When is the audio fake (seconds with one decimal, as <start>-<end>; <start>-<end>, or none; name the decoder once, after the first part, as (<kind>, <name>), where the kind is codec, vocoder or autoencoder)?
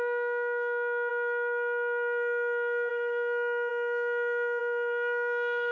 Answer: 0.0-1.1 (autoencoder, DAC-VAE); 2.9-5.7